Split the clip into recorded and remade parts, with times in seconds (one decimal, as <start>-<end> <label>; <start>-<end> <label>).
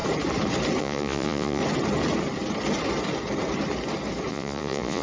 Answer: 0.0-0.8 recorded; 0.8-1.6 remade; 1.6-4.3 recorded; 4.3-5.0 remade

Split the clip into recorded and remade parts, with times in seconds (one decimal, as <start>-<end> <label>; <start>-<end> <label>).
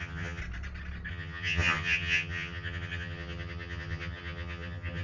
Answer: 0.0-0.4 remade; 0.4-1.1 recorded; 1.1-5.0 remade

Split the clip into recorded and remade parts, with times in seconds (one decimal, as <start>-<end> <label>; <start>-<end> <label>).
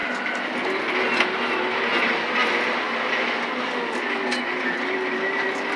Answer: 0.0-5.8 recorded